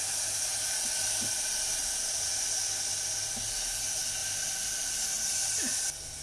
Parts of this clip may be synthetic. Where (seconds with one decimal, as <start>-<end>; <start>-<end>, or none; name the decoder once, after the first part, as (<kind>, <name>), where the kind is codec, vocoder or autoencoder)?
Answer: 4.2-4.9 (vocoder, BigVGAN v2)